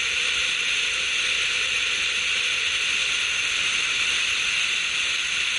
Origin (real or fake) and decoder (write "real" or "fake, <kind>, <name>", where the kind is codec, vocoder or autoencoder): real